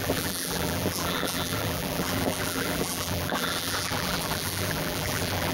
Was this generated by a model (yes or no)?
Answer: yes